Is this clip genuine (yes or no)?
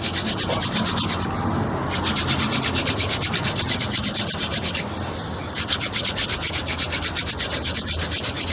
yes